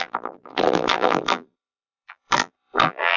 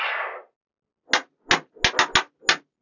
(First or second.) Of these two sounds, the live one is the second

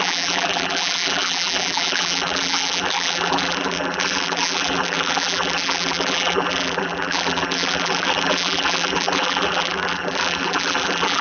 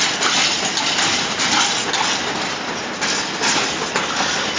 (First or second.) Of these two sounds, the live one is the second